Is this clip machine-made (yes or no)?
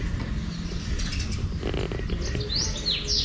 no